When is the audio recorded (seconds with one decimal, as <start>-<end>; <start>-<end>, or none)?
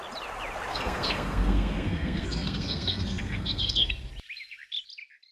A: 0.0-0.7; 3.9-5.3